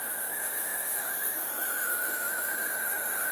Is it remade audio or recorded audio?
remade